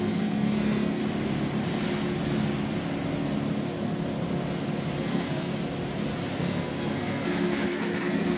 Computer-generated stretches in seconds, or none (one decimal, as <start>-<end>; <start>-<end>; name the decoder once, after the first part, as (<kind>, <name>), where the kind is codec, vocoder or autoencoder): 0.0-1.0 (codec, SNAC); 5.0-5.5; 6.4-8.4